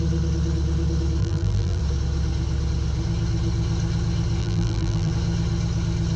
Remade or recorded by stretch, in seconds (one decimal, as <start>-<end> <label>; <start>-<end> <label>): 0.0-1.2 recorded; 1.2-1.8 remade; 1.8-4.4 recorded; 4.4-5.1 remade; 5.1-6.2 recorded